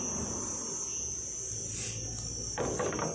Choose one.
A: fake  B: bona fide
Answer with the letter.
B